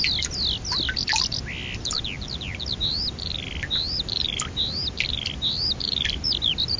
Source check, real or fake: real